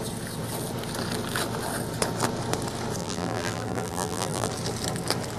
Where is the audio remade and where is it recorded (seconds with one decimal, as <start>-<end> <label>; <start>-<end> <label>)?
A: 0.0-3.0 recorded; 3.0-4.5 remade; 4.5-5.4 recorded